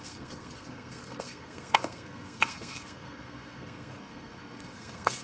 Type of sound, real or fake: fake